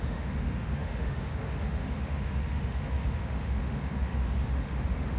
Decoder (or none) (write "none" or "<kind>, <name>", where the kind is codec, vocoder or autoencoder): autoencoder, DAC-VAE